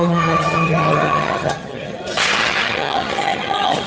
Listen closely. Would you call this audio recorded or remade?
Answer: remade